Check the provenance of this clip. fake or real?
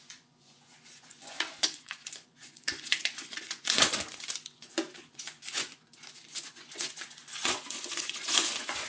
fake